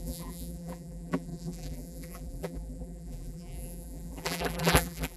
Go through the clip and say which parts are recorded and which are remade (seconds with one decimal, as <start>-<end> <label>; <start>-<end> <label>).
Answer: 0.0-5.2 remade